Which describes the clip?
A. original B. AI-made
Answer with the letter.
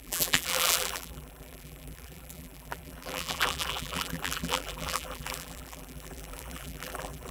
B